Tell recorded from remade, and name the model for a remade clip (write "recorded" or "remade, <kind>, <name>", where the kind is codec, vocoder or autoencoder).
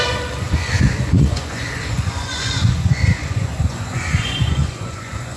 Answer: remade, vocoder, Vocos